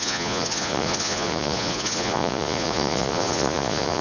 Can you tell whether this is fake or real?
fake